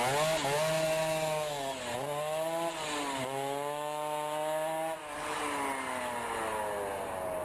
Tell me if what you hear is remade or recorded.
recorded